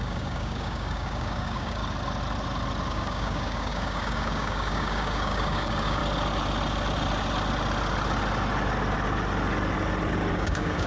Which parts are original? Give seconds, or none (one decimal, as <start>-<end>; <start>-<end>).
1.8-2.9; 6.0-10.3